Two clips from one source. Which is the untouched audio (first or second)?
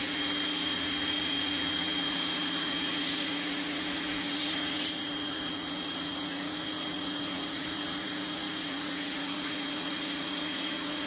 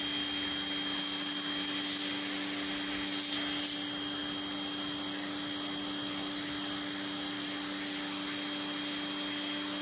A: second